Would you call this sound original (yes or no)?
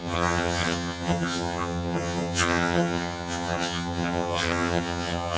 no